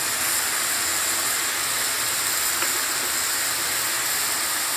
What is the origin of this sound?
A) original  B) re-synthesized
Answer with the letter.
A